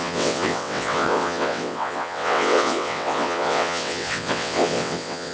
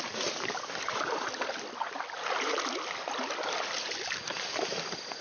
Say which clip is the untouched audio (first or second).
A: second